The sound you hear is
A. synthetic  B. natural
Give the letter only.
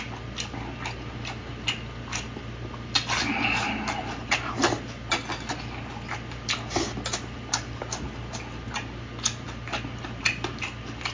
B